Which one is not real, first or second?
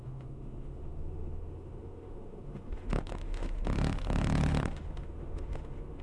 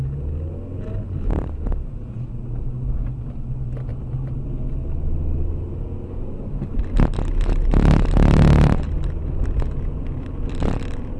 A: first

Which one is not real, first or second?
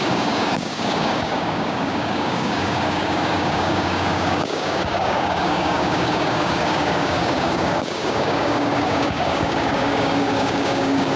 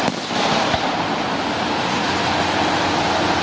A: first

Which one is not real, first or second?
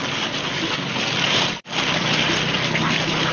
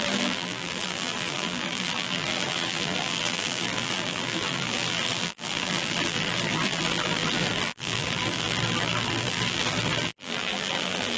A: second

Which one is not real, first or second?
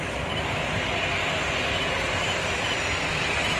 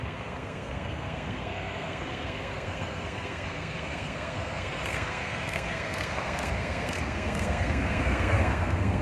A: second